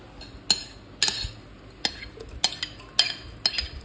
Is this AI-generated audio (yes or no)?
no